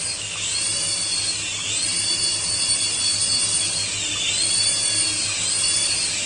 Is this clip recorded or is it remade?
recorded